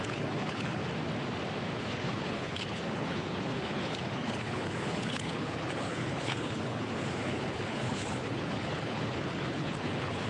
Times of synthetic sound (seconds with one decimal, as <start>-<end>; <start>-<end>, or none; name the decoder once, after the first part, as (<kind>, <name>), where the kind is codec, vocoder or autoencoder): 0.0-0.8 (codec, HILCodec); 1.8-10.3